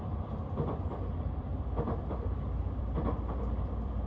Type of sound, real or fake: fake